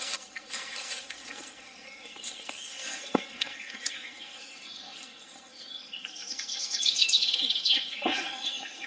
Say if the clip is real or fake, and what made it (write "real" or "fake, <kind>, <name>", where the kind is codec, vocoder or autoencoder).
fake, codec, SNAC